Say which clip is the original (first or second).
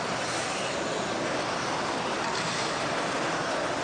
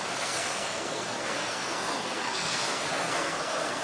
first